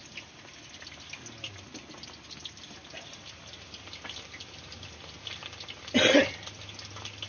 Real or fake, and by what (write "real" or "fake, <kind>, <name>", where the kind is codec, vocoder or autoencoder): real